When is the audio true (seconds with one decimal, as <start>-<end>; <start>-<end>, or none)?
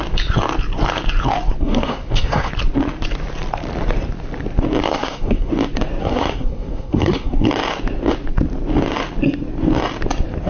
0.0-1.6; 2.5-4.8; 5.5-6.0; 7.5-10.5